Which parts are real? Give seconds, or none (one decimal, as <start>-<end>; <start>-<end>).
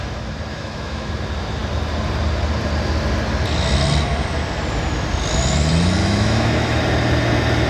0.0-0.5; 1.1-6.0; 6.8-7.7